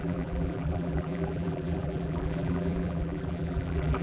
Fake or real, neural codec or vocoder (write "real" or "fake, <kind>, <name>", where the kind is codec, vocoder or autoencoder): fake, vocoder, BigVGAN v2